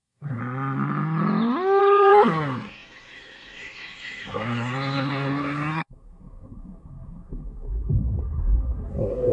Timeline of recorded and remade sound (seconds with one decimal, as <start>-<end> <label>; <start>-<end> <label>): 0.0-0.4 remade; 0.4-1.8 recorded; 1.8-9.3 remade